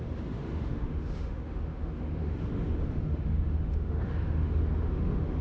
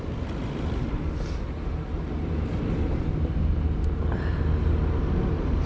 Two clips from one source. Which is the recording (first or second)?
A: second